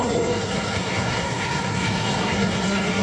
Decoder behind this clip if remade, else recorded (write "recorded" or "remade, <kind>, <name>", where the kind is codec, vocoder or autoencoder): remade, codec, SNAC